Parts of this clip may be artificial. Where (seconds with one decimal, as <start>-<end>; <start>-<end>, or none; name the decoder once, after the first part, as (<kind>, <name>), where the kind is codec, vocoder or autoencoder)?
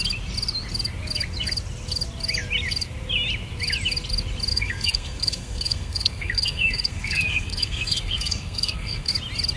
4.5-9.1 (codec, SNAC)